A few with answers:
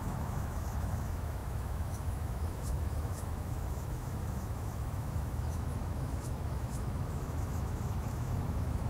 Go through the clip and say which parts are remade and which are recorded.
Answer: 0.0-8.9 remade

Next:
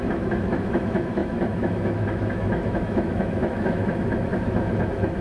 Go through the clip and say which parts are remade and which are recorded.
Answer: 0.0-5.2 remade

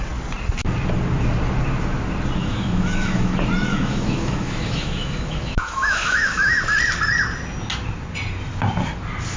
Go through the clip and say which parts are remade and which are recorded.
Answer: 0.0-2.4 recorded; 2.4-3.3 remade; 3.3-3.7 recorded; 3.7-6.6 remade; 6.6-9.4 recorded

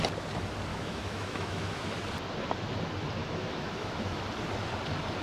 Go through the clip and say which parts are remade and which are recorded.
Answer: 0.0-0.7 recorded; 0.7-2.0 remade; 2.0-3.2 recorded; 3.2-4.2 remade; 4.2-5.2 recorded

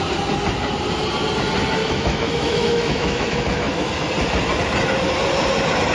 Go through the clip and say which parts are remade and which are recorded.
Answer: 0.0-1.8 recorded; 1.8-3.9 remade; 3.9-5.9 recorded

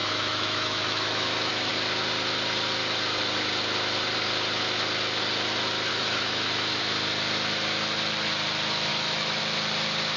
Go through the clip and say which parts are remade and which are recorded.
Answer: 0.0-1.7 remade; 1.7-5.9 recorded; 5.9-6.8 remade; 6.8-8.9 recorded; 8.9-9.4 remade; 9.4-10.2 recorded

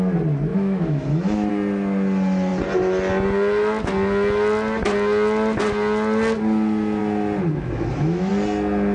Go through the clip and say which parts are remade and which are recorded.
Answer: 0.0-0.5 recorded; 0.5-1.5 remade; 1.5-7.5 recorded; 7.5-8.3 remade; 8.3-8.9 recorded

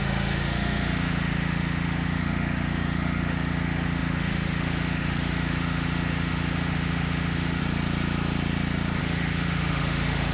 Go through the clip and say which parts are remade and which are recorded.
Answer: 0.0-7.6 remade; 7.6-9.0 recorded; 9.0-10.3 remade